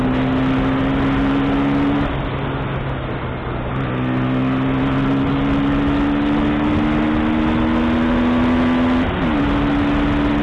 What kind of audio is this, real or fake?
real